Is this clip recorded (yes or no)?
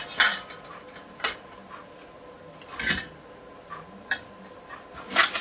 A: yes